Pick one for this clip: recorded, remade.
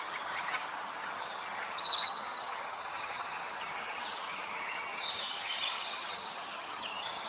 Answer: remade